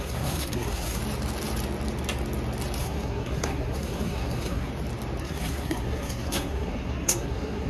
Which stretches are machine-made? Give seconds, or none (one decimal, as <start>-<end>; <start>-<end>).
0.0-1.0; 2.8-4.7; 5.2-7.7